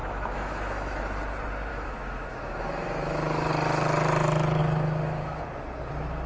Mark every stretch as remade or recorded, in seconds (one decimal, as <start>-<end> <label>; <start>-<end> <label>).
0.0-1.0 remade; 1.0-1.7 recorded; 1.7-3.5 remade; 3.5-4.6 recorded; 4.6-5.4 remade; 5.4-6.3 recorded